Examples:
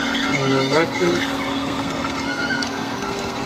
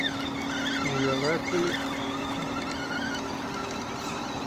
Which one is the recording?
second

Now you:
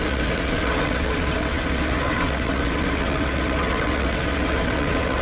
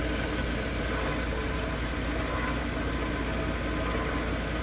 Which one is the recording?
second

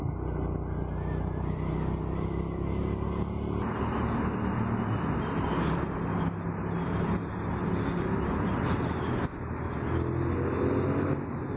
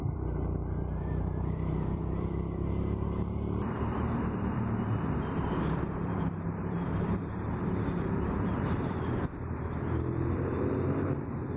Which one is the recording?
first